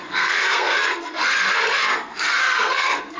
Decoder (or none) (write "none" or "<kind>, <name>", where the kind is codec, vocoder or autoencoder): codec, SNAC